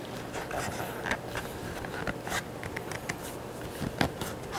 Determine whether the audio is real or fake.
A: real